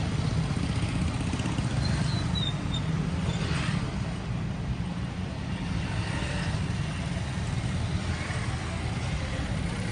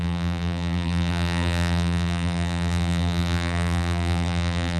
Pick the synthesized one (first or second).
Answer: second